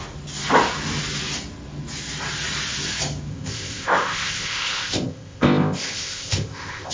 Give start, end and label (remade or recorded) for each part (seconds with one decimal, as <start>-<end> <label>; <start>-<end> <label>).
0.0-3.3 recorded; 3.3-6.9 remade